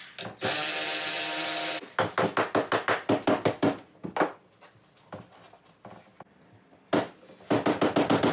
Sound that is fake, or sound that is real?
real